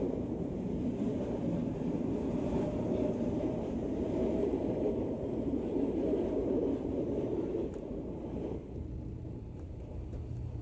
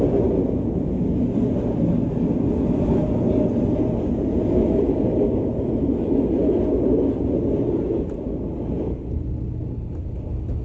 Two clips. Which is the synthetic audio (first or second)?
first